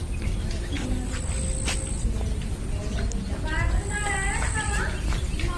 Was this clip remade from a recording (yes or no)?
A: no